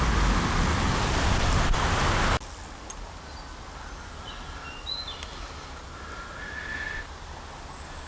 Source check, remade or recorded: recorded